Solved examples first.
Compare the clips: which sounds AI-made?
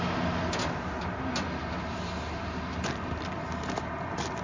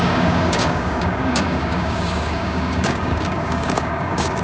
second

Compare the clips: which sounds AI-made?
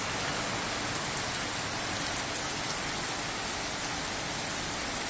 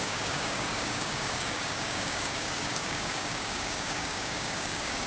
second